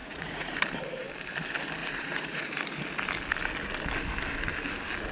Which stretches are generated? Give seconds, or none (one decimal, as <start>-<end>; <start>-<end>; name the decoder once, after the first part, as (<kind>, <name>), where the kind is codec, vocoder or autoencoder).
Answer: 0.0-0.6 (vocoder, Vocos); 1.8-2.6